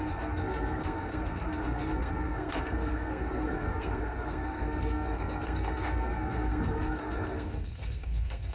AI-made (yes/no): yes